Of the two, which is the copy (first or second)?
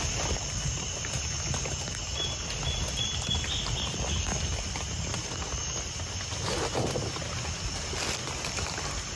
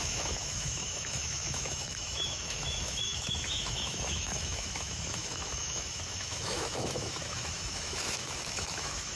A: second